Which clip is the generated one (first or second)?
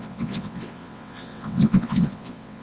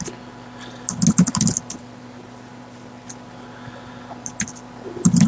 first